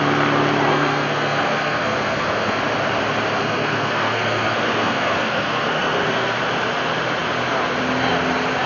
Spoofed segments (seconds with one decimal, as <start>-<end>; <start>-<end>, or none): 0.7-2.6; 3.4-6.4